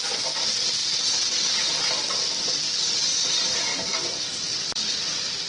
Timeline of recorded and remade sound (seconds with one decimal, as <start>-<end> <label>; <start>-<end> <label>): 0.0-3.7 recorded; 3.7-4.8 remade; 4.8-5.5 recorded